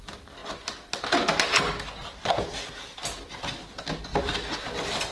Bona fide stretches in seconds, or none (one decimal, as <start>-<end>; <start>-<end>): 0.0-5.1